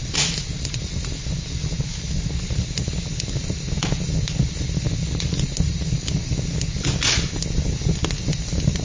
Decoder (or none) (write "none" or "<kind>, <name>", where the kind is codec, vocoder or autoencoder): none